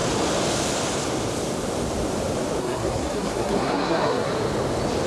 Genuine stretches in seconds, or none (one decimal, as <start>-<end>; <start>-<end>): 0.0-2.6; 4.3-5.1